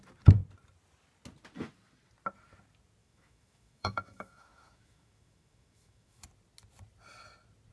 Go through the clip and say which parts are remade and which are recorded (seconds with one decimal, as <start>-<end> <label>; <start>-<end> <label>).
0.0-3.0 recorded; 3.0-6.2 remade; 6.2-7.7 recorded